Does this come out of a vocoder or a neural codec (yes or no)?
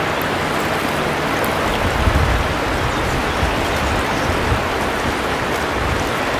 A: no